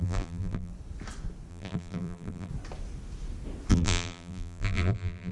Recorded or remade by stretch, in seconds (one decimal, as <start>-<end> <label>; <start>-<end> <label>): 0.0-0.7 remade; 0.7-1.5 recorded; 1.5-2.5 remade; 2.5-3.7 recorded; 3.7-5.3 remade